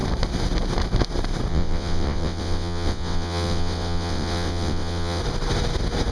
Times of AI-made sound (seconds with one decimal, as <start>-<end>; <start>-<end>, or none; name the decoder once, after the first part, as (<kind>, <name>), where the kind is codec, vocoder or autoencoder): 1.5-5.2 (vocoder, WaveNeXt)